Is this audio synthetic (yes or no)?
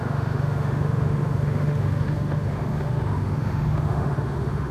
yes